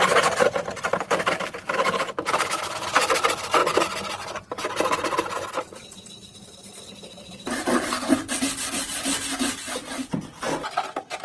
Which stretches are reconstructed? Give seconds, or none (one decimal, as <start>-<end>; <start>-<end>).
none